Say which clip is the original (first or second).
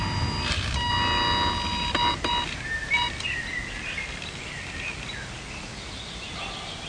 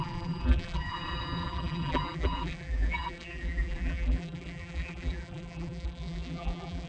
first